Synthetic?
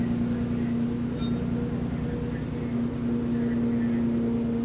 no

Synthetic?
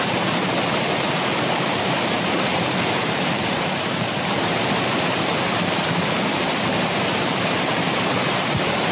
yes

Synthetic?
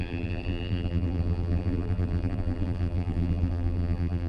yes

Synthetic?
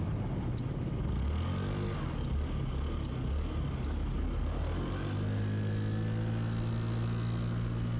no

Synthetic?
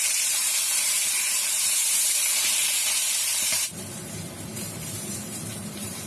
yes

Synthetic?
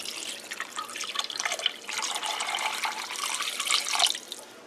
no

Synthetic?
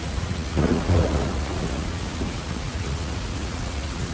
yes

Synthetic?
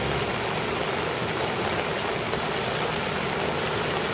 no